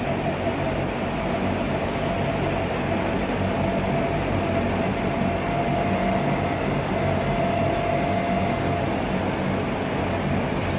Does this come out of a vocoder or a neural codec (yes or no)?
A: no